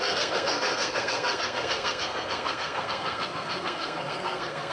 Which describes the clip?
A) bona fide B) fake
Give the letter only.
B